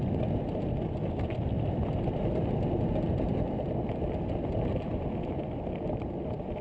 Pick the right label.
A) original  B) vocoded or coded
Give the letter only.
A